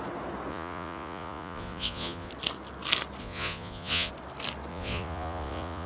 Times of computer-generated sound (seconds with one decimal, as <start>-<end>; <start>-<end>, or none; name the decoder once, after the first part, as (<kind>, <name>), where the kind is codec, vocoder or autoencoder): 0.5-2.3 (vocoder, Vocos); 3.2-4.1; 4.7-5.9